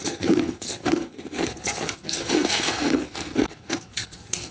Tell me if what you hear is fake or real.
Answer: fake